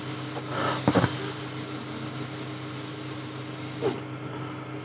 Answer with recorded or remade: recorded